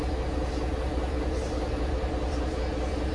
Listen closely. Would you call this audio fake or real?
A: real